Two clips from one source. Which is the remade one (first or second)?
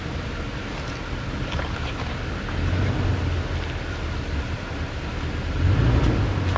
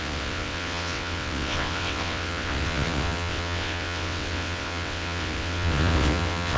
second